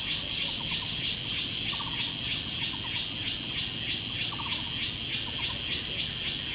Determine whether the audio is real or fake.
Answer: real